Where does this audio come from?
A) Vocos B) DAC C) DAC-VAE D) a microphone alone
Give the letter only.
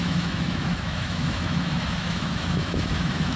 C